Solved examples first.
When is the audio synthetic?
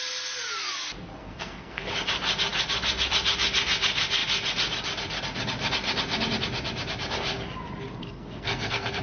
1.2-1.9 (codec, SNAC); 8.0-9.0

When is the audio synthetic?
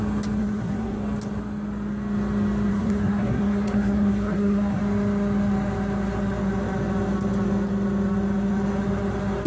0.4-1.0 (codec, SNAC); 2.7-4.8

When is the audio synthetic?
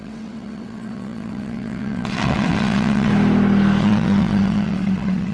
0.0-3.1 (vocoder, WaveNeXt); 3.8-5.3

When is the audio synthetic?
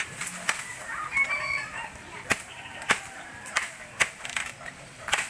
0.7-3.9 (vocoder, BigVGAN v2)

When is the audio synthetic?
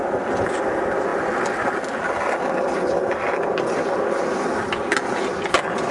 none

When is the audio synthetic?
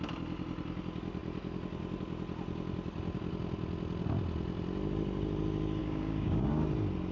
5.8-6.5 (codec, DAC)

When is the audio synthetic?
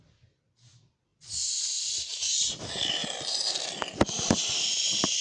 none